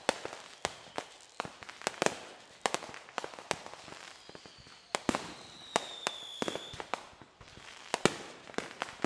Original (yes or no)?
yes